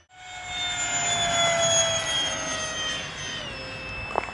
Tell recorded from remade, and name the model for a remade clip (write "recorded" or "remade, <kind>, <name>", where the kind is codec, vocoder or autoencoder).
recorded